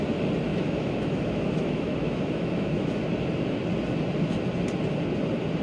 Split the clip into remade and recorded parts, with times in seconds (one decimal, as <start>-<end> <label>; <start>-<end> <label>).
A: 0.0-0.5 recorded; 0.5-3.0 remade; 3.0-5.6 recorded